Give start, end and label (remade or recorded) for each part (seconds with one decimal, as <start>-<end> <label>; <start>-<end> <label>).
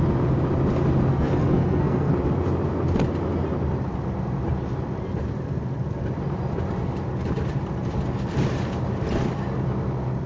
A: 0.0-1.1 recorded; 1.1-2.1 remade; 2.1-10.3 recorded